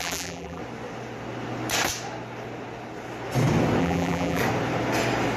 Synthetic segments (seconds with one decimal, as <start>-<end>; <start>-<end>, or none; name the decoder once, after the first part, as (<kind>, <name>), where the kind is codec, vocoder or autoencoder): 0.0-0.6 (vocoder, BigVGAN v2); 3.8-4.4